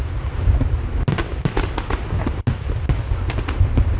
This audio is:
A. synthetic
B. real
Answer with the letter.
B